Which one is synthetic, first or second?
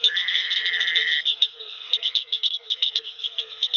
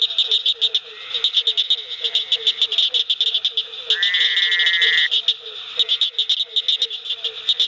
first